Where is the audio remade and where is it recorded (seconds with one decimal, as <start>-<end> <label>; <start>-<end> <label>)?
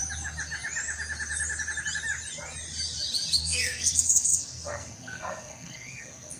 0.0-3.4 recorded; 3.4-6.4 remade